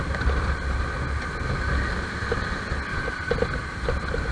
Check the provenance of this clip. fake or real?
real